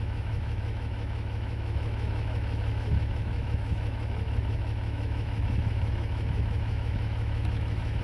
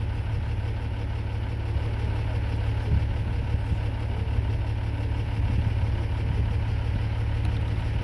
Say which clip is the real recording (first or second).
second